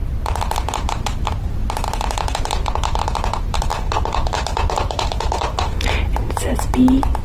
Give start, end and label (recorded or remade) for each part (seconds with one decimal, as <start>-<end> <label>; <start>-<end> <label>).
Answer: 0.0-7.2 recorded